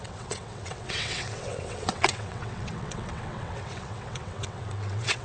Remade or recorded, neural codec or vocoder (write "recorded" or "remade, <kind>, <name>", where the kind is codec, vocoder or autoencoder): remade, vocoder, WaveNeXt